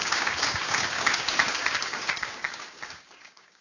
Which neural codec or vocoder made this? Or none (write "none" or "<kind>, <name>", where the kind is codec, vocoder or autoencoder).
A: codec, DAC